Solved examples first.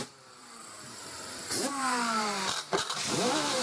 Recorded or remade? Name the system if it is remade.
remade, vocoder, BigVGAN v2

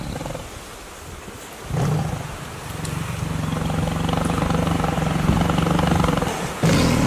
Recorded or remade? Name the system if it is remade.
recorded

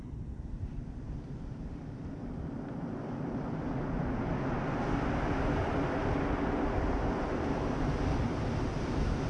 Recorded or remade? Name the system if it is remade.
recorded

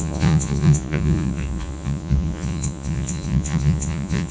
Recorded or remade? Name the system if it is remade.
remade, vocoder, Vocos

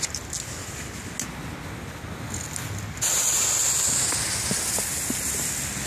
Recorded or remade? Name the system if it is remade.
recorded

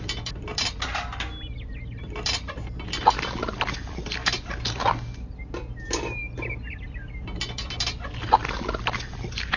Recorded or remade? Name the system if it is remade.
recorded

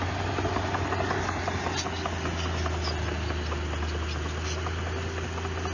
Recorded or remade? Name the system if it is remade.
recorded